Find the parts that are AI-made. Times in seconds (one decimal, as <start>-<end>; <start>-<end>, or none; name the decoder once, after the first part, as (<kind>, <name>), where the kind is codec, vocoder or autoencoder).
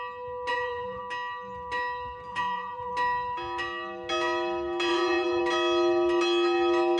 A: 0.5-1.0 (vocoder, Vocos); 2.3-2.9; 4.9-5.4